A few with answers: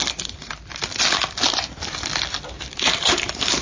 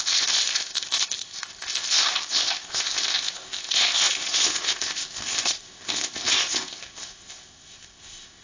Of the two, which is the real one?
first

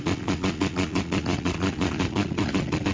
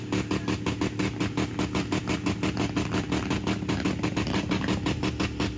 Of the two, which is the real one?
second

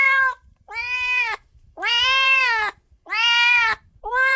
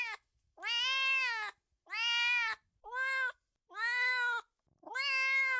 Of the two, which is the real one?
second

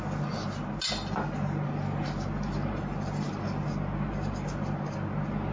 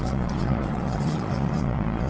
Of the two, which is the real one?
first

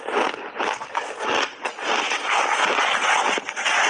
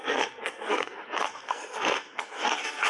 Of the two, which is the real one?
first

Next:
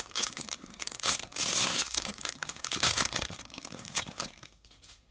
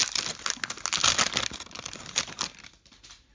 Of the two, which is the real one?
second